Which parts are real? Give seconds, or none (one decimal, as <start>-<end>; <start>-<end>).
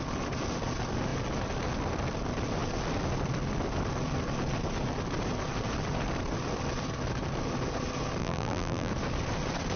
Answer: 0.0-8.2; 8.9-9.8